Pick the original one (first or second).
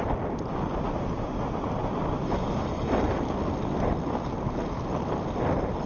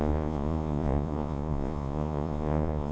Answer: first